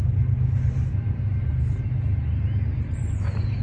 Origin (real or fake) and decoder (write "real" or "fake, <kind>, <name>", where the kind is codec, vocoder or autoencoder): real